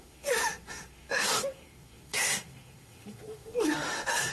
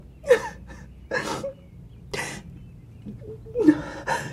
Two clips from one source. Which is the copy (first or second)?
first